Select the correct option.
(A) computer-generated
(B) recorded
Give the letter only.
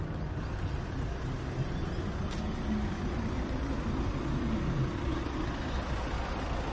B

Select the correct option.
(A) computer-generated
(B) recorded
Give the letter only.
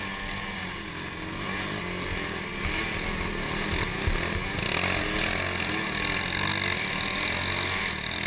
B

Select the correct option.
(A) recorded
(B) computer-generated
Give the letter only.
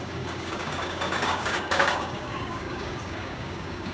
B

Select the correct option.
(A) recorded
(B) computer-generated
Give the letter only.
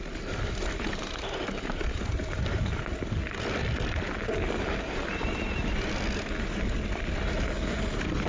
A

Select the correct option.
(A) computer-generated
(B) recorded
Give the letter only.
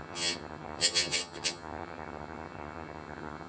A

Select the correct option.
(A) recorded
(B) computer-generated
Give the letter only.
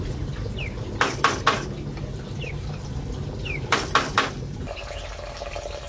A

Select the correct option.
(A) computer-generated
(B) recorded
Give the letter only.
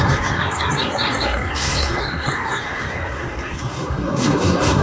A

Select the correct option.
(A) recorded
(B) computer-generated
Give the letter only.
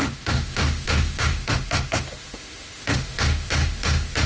B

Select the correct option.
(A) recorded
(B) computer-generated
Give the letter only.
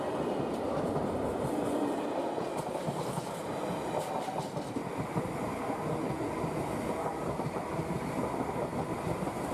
A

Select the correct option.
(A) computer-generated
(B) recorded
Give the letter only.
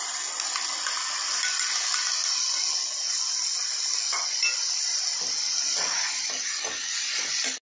B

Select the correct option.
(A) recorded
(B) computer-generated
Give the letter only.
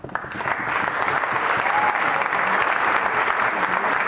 A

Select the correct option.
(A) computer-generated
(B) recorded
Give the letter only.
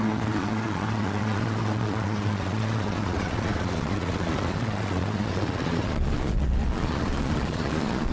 A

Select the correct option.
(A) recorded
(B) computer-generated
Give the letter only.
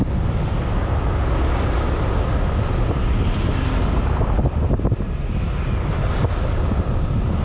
A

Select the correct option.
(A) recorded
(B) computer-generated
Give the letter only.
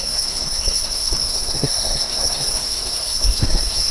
B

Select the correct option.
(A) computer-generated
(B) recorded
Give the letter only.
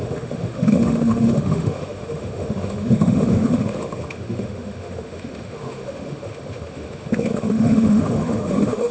A